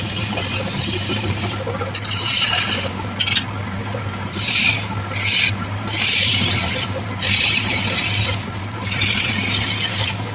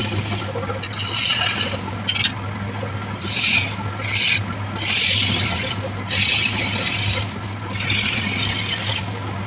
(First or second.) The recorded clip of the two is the second